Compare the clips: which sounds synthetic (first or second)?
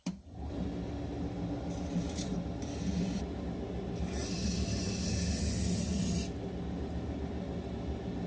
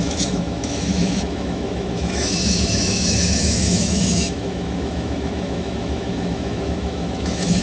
second